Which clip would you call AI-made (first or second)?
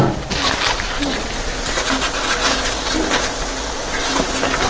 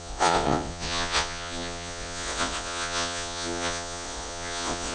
second